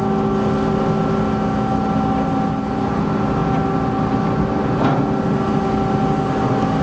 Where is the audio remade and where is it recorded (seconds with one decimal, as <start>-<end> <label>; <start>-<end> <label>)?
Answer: 0.0-6.8 recorded